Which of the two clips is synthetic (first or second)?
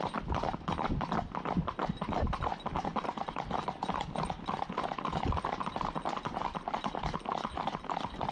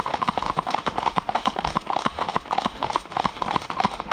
second